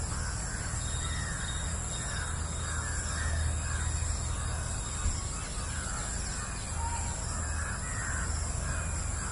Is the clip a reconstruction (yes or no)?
no